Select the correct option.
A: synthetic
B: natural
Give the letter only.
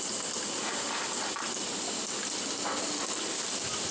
B